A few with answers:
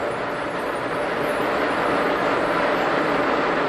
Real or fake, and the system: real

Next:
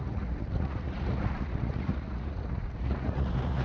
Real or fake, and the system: fake, vocoder, Vocos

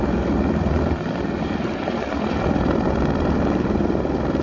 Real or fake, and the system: real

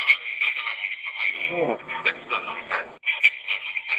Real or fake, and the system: fake, codec, SNAC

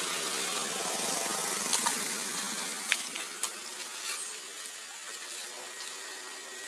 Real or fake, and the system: real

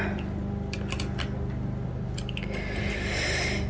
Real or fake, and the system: real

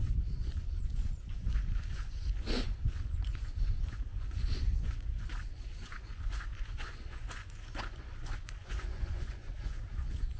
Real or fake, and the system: fake, vocoder, Vocos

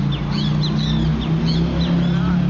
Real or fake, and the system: real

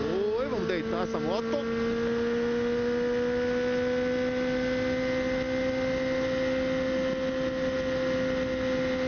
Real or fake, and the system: real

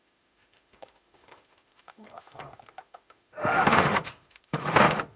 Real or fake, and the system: fake, autoencoder, DAC-VAE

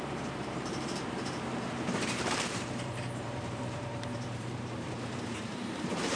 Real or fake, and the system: fake, vocoder, BigVGAN v2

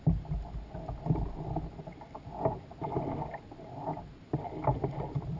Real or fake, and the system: real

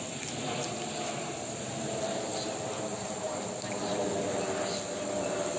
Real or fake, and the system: real